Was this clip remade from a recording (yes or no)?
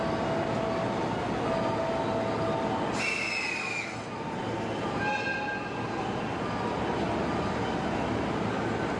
no